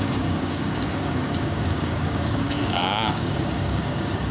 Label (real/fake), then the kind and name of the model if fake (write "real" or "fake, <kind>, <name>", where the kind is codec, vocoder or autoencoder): fake, codec, DAC